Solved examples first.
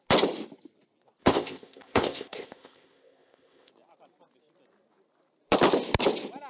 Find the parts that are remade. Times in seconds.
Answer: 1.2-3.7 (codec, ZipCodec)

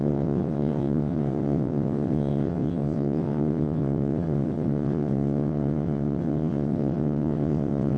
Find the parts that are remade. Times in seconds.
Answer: 0.0-8.0 (vocoder, WaveNeXt)

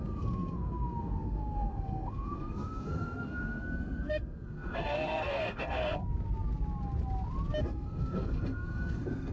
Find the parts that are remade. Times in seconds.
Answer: 0.0-6.0 (codec, SNAC); 7.6-9.3

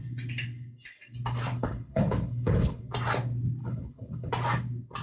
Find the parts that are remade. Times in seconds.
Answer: 1.5-2.8 (codec, HILCodec); 3.6-4.3

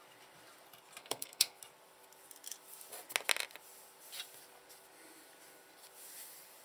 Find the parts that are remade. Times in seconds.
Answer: 1.0-1.6 (codec, SNAC)

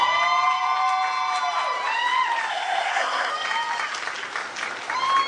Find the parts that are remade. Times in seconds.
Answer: 2.5-3.3 (codec, SNAC)